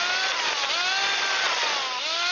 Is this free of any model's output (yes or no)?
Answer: yes